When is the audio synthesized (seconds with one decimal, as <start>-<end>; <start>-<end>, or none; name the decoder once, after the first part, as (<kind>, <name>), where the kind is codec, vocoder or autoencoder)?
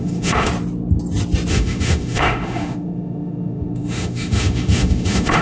0.0-0.5 (autoencoder, DAC-VAE); 1.5-5.4